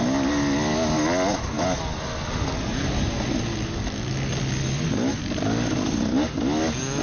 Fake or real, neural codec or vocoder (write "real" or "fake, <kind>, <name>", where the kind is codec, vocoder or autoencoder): real